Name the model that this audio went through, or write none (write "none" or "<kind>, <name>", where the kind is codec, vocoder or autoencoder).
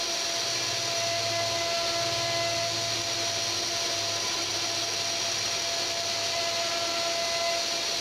none